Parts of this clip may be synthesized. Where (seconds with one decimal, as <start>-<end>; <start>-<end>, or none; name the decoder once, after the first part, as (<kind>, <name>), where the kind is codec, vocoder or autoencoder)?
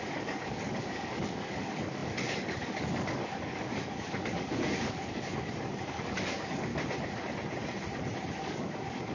0.0-6.7 (codec, DAC); 8.4-9.1